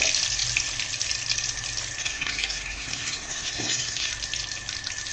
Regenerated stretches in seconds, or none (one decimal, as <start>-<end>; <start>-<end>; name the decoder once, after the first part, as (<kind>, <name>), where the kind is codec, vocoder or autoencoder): 2.0-4.1 (codec, SNAC)